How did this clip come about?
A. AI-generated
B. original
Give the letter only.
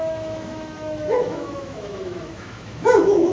A